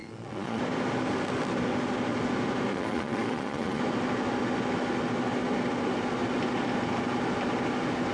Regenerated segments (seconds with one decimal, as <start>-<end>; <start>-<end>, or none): 0.0-0.6; 2.7-3.8